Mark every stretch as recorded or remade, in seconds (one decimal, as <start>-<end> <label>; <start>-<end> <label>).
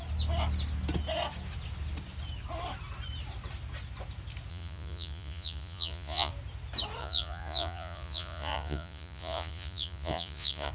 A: 0.0-4.5 recorded; 4.5-6.3 remade; 6.3-7.0 recorded; 7.0-10.7 remade